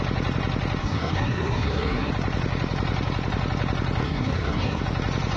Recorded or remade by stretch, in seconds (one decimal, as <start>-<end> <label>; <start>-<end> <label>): 0.0-0.8 recorded; 0.8-2.1 remade; 2.1-4.0 recorded; 4.0-4.8 remade; 4.8-5.4 recorded